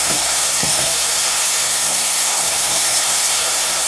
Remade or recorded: remade